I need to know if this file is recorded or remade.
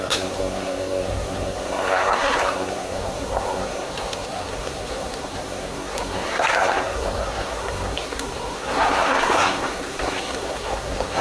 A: remade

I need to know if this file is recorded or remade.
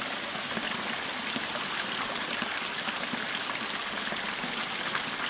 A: recorded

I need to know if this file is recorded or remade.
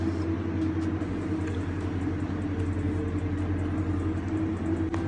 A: recorded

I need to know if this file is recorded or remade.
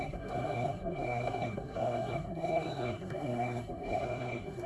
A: remade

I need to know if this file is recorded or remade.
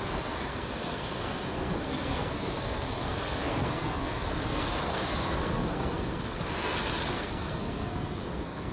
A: remade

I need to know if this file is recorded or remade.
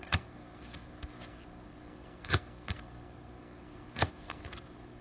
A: remade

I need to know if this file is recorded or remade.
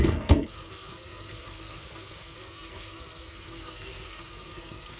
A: remade